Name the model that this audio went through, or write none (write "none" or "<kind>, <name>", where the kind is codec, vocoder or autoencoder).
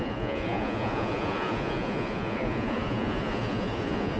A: vocoder, Vocos